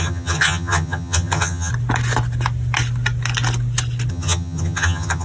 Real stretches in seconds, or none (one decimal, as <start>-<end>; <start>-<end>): 1.7-4.1